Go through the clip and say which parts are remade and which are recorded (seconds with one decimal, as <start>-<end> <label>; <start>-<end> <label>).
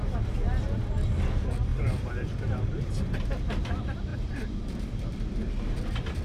0.0-1.7 recorded; 1.7-2.5 remade; 2.5-4.1 recorded; 4.1-6.2 remade